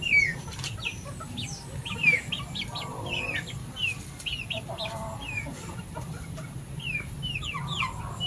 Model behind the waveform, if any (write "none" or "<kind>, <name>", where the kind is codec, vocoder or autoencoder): none